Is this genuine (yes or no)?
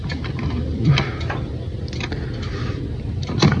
yes